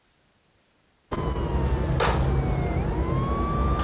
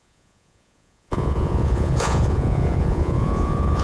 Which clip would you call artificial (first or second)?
second